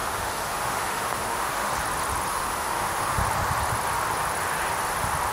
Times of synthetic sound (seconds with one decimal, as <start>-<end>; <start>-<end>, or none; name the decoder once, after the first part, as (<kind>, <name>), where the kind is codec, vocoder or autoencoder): 0.0-1.7 (autoencoder, DAC-VAE); 2.3-3.2